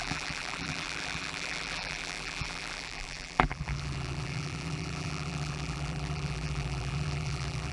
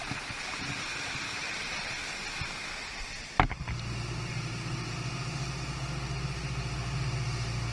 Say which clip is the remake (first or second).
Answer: first